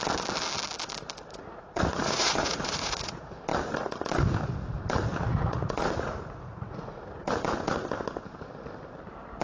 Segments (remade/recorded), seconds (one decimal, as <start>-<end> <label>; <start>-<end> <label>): 0.0-1.3 recorded; 1.3-3.4 remade; 3.4-5.1 recorded; 5.1-7.3 remade; 7.3-9.4 recorded